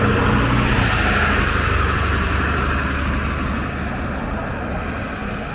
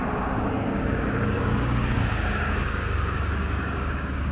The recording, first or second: first